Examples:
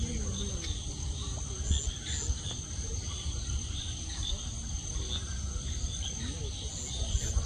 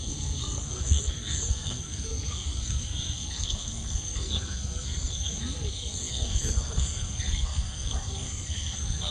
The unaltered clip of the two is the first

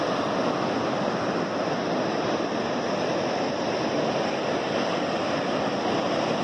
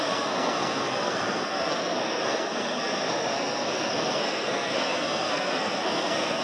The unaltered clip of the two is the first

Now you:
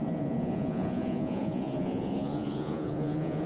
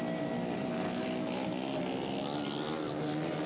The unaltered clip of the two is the second